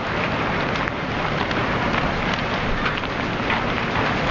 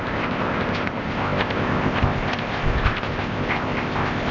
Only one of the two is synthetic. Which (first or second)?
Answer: second